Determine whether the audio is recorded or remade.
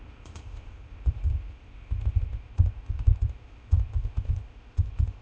remade